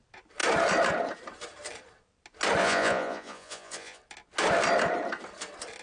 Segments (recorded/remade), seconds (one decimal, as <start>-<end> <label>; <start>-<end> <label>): 0.0-2.6 recorded; 2.6-4.0 remade; 4.0-5.8 recorded

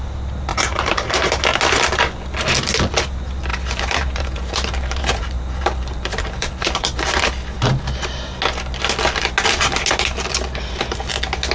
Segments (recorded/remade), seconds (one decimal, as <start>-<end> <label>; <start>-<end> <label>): 0.0-0.5 recorded; 0.5-1.3 remade; 1.3-3.5 recorded; 3.5-7.2 remade; 7.2-11.5 recorded